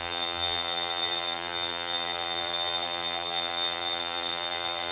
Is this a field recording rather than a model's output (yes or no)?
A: no